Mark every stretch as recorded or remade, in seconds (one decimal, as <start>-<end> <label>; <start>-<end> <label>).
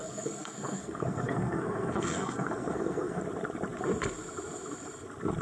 0.0-3.2 remade; 3.2-5.4 recorded